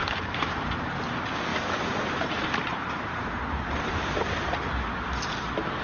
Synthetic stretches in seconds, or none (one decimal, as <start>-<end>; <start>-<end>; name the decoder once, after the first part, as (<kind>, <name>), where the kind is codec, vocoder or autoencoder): 0.0-0.9 (vocoder, BigVGAN v2); 1.5-4.6